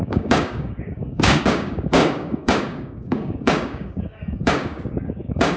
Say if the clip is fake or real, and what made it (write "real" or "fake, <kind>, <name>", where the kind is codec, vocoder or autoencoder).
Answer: fake, codec, DAC